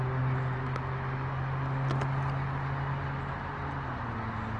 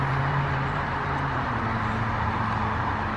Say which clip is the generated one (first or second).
second